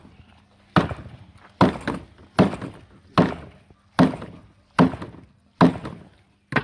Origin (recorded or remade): recorded